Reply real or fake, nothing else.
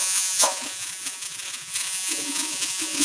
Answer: fake